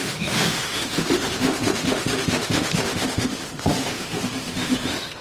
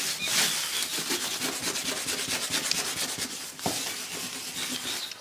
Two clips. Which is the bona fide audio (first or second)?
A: second